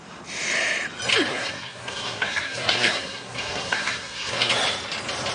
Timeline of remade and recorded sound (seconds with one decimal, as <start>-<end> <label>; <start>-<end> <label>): 0.0-1.3 recorded; 1.3-4.5 remade; 4.5-5.3 recorded